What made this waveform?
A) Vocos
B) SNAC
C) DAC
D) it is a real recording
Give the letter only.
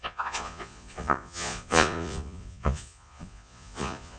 A